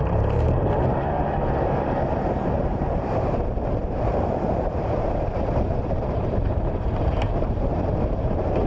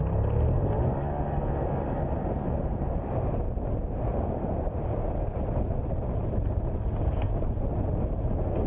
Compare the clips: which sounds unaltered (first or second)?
second